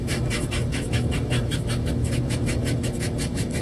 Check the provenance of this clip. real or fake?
fake